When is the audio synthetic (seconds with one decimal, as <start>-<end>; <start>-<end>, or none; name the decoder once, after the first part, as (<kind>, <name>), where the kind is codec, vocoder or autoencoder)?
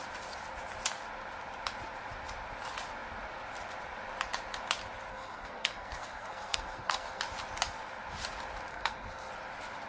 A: 5.1-7.2 (codec, SNAC); 8.7-9.3